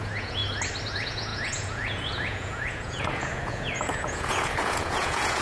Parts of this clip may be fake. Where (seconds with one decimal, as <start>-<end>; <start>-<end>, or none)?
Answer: 0.0-0.4; 0.9-5.4